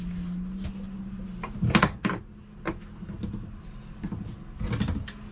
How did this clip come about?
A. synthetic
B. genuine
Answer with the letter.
B